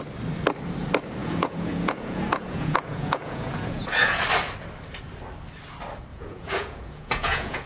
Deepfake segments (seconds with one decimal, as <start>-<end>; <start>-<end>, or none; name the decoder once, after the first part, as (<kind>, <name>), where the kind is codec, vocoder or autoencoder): 1.2-4.2 (vocoder, Vocos); 6.1-7.7